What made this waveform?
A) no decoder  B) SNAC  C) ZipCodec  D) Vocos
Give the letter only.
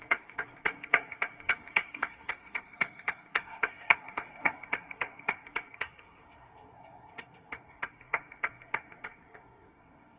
B